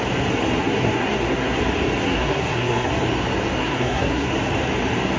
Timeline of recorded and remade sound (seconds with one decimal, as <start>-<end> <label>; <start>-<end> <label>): 0.0-0.6 recorded; 0.6-1.6 remade; 1.6-2.0 recorded; 2.0-2.9 remade; 2.9-3.6 recorded; 3.6-4.3 remade; 4.3-5.2 recorded